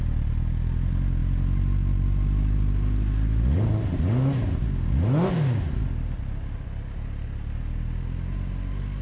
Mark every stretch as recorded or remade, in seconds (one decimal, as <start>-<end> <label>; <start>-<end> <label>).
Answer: 0.0-9.0 recorded